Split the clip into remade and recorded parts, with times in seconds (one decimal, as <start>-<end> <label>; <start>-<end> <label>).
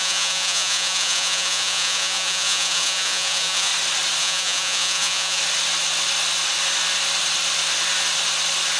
0.0-3.7 remade; 3.7-4.2 recorded; 4.2-5.4 remade; 5.4-8.8 recorded